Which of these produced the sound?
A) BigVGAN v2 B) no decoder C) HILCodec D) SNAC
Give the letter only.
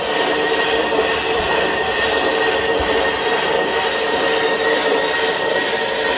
A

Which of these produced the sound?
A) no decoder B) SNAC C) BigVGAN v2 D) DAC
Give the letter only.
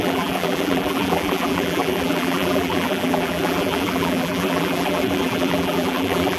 C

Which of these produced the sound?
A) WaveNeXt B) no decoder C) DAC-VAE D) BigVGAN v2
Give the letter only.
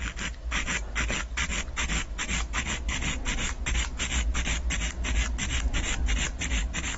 B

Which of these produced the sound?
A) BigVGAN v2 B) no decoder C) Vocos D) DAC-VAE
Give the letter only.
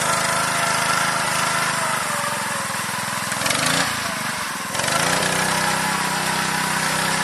B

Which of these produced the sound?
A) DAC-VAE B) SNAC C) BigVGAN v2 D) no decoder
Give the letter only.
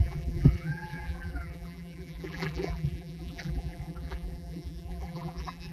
C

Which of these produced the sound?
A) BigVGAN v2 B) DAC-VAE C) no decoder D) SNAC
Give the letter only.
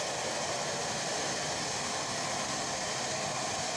C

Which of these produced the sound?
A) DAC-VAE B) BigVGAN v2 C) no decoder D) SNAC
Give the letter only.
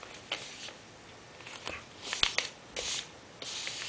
C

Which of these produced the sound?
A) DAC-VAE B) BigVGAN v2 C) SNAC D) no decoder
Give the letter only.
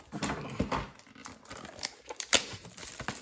D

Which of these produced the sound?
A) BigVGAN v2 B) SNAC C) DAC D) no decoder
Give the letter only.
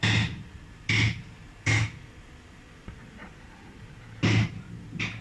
A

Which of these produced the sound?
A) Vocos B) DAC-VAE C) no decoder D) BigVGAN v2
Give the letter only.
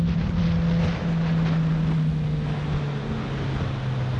C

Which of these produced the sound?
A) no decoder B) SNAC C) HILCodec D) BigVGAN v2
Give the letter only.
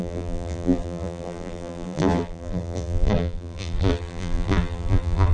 D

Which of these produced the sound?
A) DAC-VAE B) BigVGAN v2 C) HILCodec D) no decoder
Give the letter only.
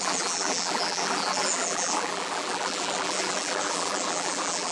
B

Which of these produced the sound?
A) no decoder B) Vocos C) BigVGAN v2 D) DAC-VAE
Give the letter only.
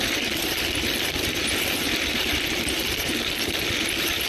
C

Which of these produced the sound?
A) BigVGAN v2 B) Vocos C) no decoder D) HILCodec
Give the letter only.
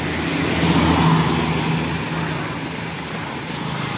C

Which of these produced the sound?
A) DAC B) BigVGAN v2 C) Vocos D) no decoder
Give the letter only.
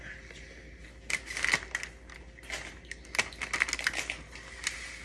D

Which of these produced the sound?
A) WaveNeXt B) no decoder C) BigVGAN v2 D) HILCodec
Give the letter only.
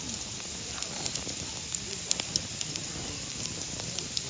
C